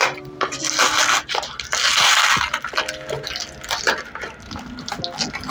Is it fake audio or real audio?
real